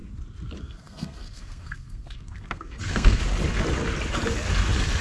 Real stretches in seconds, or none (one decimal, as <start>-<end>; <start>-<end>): 0.0-0.6; 3.2-5.0

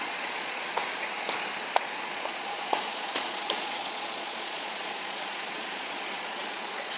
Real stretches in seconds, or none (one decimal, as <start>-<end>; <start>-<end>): 0.8-2.0

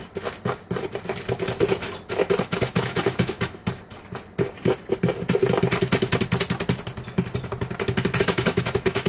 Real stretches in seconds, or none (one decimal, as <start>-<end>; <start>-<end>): 0.0-2.4; 3.6-8.2

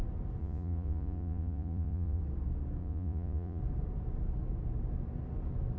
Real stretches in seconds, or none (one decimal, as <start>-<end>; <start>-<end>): 0.0-0.4; 2.2-2.8; 3.6-5.8

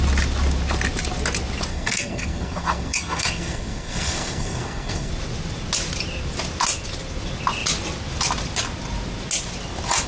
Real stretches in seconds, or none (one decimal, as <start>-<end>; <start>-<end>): 0.0-1.7; 5.1-10.1

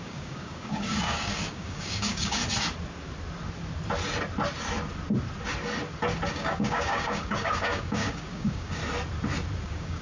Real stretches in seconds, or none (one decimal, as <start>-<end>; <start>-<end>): 2.4-6.3; 8.8-9.6

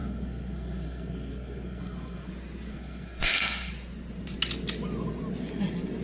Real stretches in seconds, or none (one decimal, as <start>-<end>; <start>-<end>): 2.3-2.7; 3.7-6.0